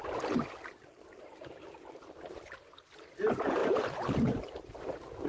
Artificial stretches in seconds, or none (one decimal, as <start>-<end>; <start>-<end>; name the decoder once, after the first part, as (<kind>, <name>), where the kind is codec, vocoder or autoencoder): 1.3-3.2 (vocoder, BigVGAN v2); 3.6-4.7